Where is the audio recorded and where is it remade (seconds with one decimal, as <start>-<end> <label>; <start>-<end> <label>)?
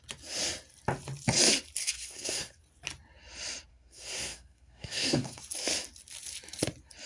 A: 0.0-1.8 recorded; 1.8-2.6 remade; 2.6-3.7 recorded; 3.7-5.4 remade; 5.4-7.1 recorded